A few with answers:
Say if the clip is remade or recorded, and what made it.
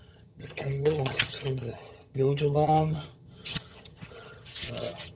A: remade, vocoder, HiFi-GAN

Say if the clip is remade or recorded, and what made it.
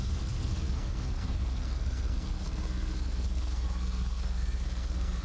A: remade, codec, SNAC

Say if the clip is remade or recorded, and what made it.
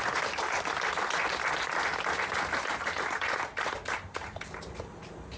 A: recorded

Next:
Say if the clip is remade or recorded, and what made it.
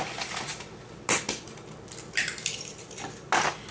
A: recorded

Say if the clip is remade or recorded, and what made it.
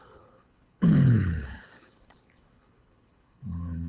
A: remade, codec, HILCodec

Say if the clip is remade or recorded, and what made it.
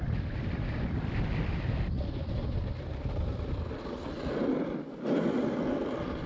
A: recorded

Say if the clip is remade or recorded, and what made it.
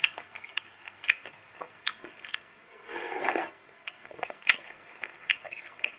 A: remade, codec, SNAC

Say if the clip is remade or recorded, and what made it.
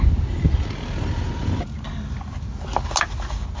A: recorded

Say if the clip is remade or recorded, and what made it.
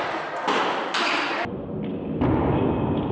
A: recorded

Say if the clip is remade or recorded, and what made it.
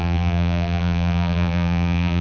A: remade, vocoder, BigVGAN v2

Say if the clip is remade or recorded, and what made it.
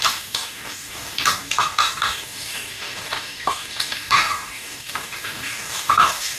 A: remade, codec, DAC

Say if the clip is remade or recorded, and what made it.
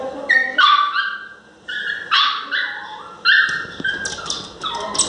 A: recorded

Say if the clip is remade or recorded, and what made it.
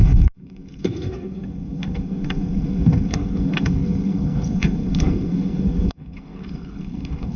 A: remade, codec, SNAC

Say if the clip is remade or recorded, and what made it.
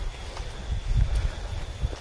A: recorded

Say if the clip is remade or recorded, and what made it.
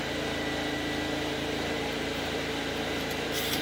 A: recorded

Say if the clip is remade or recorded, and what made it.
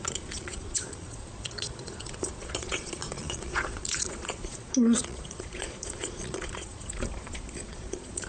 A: remade, vocoder, Vocos